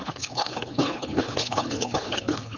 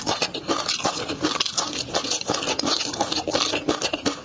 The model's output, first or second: first